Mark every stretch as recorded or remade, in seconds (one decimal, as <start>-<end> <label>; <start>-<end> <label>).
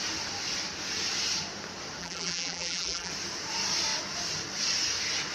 0.0-2.0 recorded; 2.0-3.1 remade; 3.1-5.3 recorded